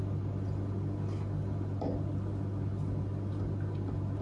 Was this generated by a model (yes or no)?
no